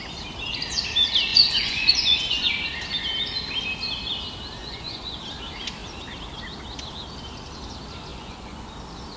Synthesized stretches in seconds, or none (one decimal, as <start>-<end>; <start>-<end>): 1.3-2.5; 4.6-5.2; 8.1-8.7